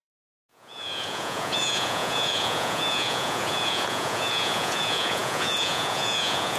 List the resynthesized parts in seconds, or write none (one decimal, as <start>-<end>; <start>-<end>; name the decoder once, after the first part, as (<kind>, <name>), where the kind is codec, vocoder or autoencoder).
0.0-6.6 (vocoder, Vocos)